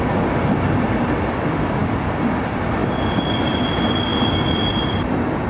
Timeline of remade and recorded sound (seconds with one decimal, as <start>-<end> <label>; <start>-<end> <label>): 0.0-5.5 recorded